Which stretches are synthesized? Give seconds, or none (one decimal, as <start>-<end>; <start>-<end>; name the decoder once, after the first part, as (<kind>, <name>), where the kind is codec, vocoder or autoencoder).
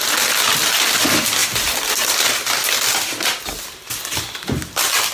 none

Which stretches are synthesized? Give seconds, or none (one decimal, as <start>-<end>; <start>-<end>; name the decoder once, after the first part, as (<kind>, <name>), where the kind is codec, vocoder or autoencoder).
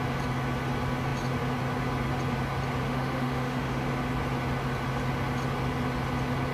2.8-3.9 (autoencoder, DAC-VAE)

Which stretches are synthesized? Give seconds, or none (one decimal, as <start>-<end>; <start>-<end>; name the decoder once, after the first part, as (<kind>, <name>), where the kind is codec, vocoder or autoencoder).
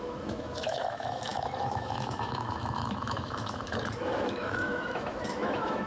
0.0-5.9 (autoencoder, DAC-VAE)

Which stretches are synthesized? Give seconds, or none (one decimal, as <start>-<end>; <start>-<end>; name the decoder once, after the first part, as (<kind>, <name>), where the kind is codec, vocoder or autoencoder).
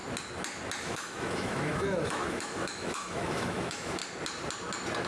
0.8-4.0 (autoencoder, DAC-VAE)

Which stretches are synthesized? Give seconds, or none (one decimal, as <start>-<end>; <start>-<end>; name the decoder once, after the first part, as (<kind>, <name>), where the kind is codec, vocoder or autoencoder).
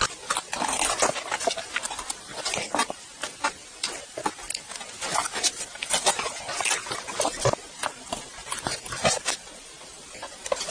none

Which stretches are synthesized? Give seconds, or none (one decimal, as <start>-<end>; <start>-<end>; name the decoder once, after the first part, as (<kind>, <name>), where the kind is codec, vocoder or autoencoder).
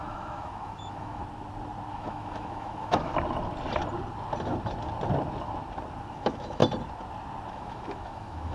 0.0-1.2 (autoencoder, DAC-VAE); 1.9-3.1; 6.1-6.6; 7.5-8.5